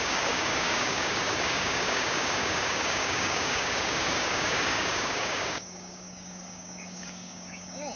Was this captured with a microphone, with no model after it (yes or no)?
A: no